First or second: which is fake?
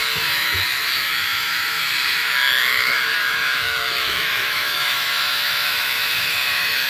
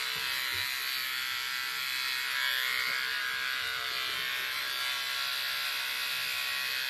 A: first